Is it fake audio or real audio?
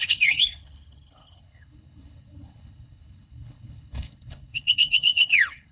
fake